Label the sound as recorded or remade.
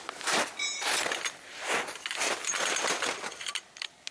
recorded